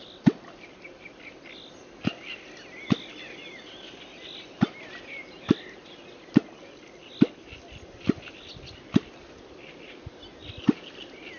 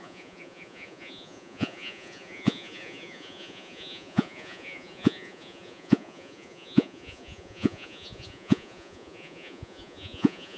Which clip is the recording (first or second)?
first